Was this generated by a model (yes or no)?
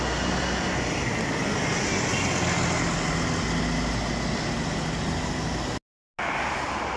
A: no